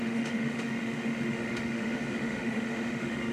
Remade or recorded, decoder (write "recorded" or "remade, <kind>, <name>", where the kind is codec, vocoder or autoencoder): remade, autoencoder, DAC-VAE